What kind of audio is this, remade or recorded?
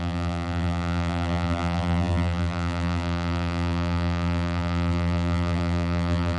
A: remade